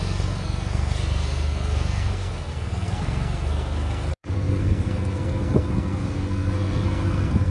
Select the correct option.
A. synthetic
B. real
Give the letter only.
A